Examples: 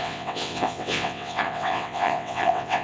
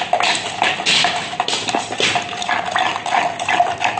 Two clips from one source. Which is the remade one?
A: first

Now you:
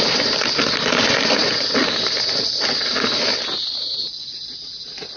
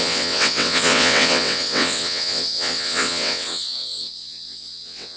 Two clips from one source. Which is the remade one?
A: second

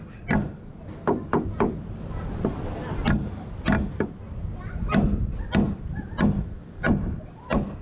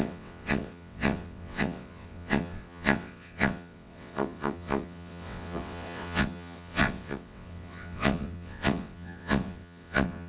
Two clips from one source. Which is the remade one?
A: second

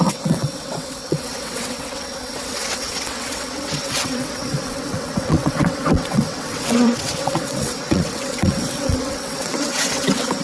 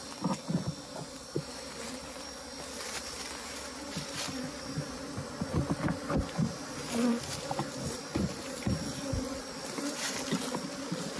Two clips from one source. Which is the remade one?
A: first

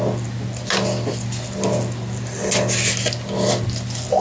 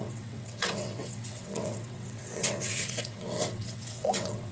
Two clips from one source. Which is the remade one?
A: second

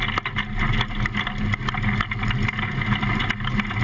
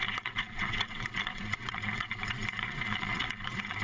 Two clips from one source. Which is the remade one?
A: second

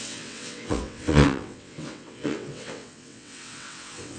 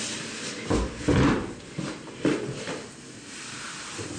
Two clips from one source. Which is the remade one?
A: first